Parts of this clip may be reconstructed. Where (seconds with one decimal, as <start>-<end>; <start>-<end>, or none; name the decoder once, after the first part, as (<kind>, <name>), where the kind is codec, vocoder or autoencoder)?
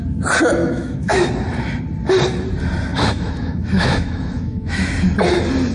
0.6-1.3 (autoencoder, DAC-VAE); 2.9-4.9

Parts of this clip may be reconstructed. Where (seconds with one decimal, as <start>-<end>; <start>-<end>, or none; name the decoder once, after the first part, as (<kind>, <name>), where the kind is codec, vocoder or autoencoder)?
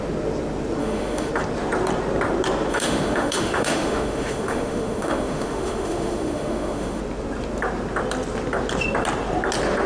0.8-1.3 (autoencoder, DAC-VAE); 2.7-7.0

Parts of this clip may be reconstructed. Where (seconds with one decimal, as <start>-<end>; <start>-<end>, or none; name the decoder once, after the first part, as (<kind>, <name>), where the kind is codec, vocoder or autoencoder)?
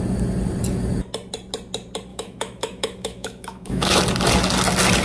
2.1-4.0 (autoencoder, DAC-VAE)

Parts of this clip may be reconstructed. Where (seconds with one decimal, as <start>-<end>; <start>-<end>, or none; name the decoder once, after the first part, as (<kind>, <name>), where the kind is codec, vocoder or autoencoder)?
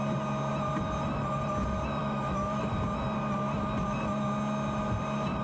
2.0-2.7 (autoencoder, DAC-VAE)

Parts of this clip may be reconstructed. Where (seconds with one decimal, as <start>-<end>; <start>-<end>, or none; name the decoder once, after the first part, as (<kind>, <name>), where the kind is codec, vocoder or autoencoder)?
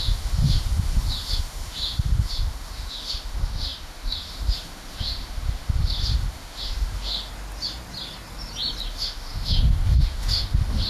0.0-7.3 (autoencoder, DAC-VAE); 8.9-10.9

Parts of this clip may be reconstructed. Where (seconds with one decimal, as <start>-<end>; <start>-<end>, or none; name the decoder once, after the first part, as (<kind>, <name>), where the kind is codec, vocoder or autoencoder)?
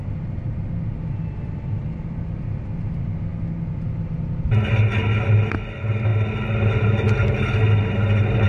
none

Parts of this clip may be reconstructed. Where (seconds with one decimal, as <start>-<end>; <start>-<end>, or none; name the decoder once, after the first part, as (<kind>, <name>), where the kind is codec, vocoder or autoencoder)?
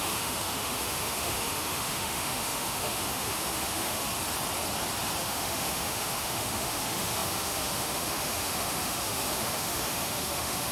0.0-4.1 (autoencoder, DAC-VAE); 5.2-10.7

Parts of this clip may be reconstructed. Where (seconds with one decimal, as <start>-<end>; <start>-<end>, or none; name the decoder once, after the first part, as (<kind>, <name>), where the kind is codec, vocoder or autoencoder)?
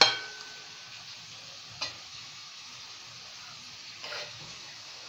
2.1-2.7 (autoencoder, DAC-VAE); 4.3-5.1